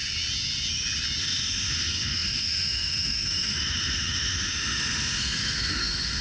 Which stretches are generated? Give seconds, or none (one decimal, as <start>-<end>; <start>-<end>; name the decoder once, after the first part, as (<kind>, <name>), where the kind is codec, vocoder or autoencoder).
1.2-6.2 (autoencoder, DAC-VAE)